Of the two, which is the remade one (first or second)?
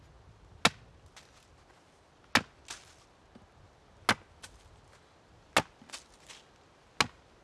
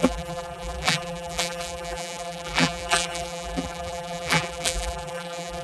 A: second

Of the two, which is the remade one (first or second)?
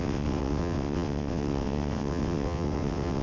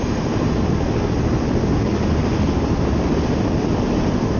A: first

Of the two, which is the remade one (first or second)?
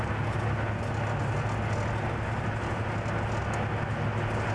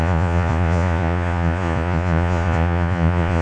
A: second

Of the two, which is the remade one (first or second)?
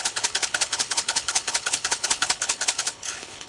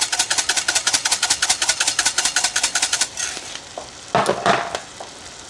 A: first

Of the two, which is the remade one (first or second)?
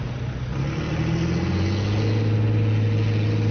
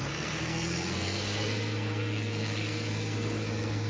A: second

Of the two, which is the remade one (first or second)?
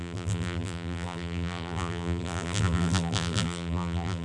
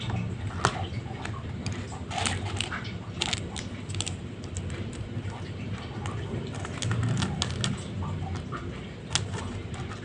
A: first